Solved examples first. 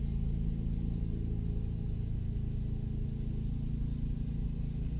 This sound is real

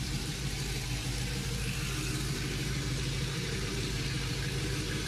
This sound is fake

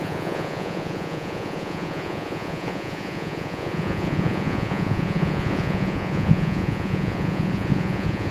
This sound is fake